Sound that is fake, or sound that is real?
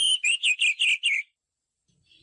real